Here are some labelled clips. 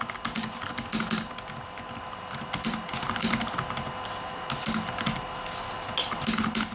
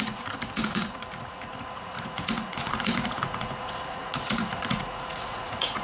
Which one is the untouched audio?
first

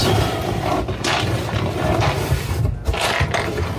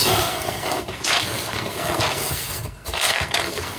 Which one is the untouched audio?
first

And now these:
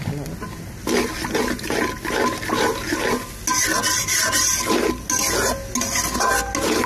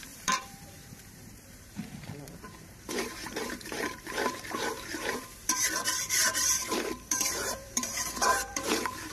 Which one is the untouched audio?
first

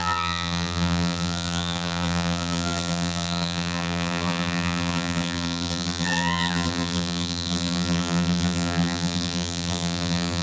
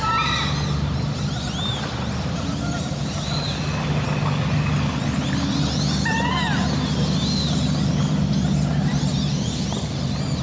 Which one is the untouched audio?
second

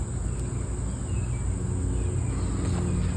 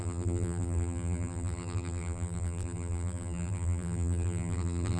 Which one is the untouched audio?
first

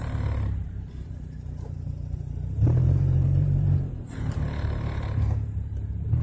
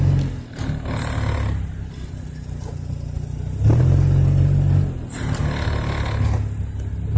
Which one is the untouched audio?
second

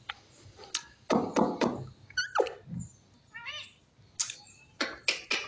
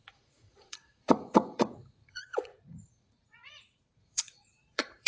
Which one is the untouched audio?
first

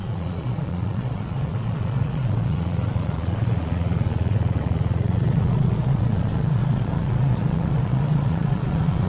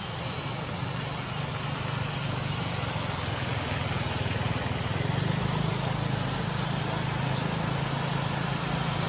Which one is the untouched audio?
second